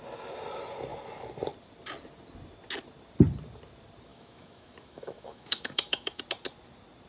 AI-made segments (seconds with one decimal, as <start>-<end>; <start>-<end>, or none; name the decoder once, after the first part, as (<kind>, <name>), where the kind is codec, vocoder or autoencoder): 4.1-6.2 (autoencoder, DAC-VAE)